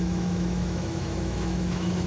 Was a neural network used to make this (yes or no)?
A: yes